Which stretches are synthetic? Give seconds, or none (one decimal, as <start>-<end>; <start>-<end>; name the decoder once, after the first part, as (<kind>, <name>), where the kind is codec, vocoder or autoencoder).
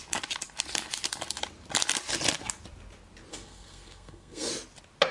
3.3-4.5 (codec, SNAC)